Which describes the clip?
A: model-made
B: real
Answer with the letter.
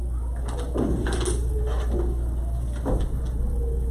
B